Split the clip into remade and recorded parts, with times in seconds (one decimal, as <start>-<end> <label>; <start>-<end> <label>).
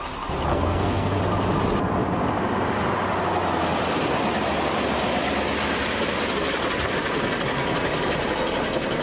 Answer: 0.0-0.5 recorded; 0.5-1.2 remade; 1.2-9.0 recorded